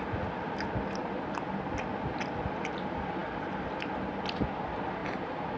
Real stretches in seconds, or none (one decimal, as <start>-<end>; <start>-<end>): 0.0-5.0